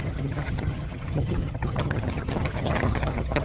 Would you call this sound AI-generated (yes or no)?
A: yes